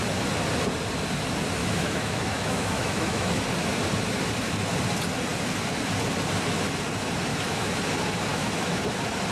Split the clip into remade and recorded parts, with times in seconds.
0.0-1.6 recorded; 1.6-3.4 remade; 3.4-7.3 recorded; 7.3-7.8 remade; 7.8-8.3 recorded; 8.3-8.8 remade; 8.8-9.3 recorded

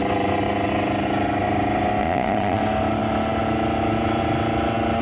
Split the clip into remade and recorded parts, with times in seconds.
0.0-2.0 recorded; 2.0-2.6 remade; 2.6-5.0 recorded

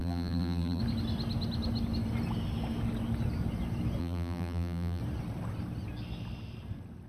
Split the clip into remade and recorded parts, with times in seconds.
0.0-0.8 remade; 0.8-4.0 recorded; 4.0-5.0 remade; 5.0-7.1 recorded

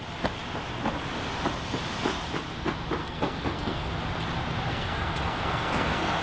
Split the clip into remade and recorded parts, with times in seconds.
0.0-3.0 recorded; 3.0-3.9 remade; 3.9-4.7 recorded; 4.7-6.2 remade

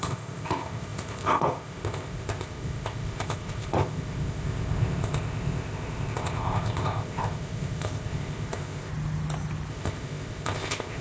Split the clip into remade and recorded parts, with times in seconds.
0.0-8.9 remade; 8.9-9.7 recorded; 9.7-11.0 remade

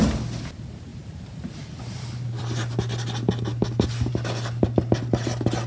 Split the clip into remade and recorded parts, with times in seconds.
0.0-0.9 recorded; 0.9-2.4 remade; 2.4-5.7 recorded

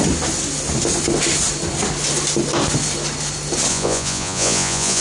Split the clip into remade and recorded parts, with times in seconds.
0.0-3.7 recorded; 3.7-5.0 remade